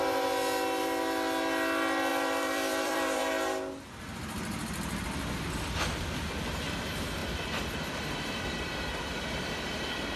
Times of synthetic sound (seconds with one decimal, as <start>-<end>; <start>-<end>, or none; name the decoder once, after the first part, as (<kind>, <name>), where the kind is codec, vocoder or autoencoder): 2.1-3.2 (vocoder, BigVGAN v2); 4.5-6.0; 7.2-8.6